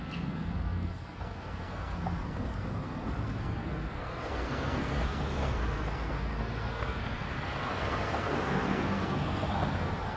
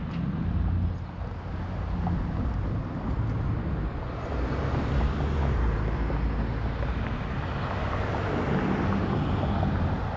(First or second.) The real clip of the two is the second